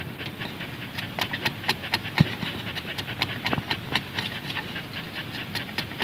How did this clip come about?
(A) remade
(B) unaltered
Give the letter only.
A